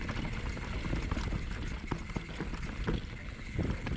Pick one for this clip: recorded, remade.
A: recorded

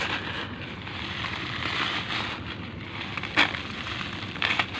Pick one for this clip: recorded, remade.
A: recorded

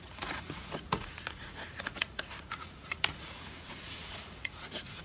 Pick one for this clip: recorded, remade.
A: remade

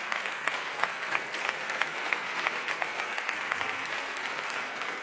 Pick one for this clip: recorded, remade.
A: remade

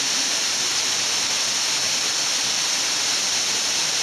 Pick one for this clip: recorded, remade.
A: recorded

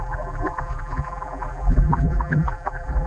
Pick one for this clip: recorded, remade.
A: remade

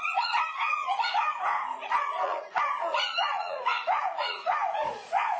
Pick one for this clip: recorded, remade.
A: remade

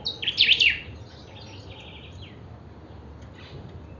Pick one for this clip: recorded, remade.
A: recorded